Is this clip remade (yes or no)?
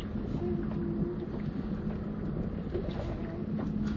no